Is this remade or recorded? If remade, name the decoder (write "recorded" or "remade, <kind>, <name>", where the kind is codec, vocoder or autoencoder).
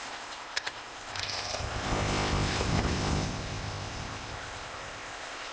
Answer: remade, codec, ZipCodec